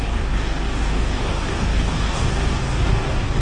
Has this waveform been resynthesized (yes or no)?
yes